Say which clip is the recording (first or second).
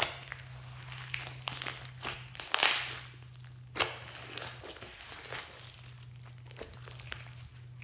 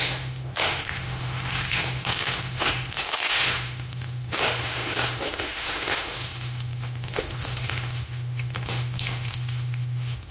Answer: first